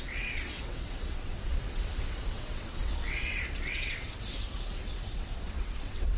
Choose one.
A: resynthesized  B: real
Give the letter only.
A